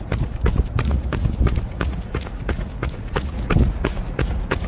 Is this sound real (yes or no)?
no